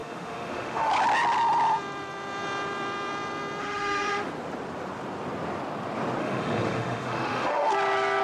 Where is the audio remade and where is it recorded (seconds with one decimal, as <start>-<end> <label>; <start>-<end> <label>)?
0.0-0.9 remade; 0.9-3.6 recorded; 3.6-4.3 remade; 4.3-6.2 recorded; 6.2-7.7 remade; 7.7-8.2 recorded

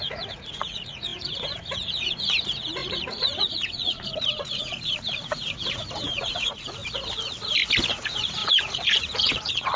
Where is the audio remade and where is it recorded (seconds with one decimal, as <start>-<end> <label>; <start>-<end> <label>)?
0.0-6.8 remade; 6.8-7.9 recorded; 7.9-9.8 remade